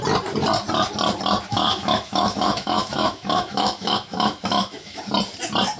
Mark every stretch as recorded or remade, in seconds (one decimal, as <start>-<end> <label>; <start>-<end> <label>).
0.0-1.5 recorded; 1.5-5.0 remade; 5.0-5.8 recorded